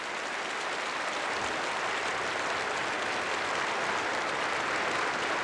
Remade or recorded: recorded